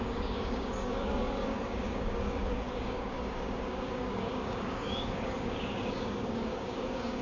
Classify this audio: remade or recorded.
remade